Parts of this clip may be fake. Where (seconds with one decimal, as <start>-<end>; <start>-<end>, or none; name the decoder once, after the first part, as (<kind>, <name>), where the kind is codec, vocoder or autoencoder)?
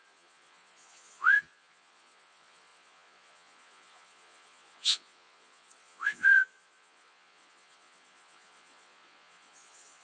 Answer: 0.0-10.0 (vocoder, Vocos)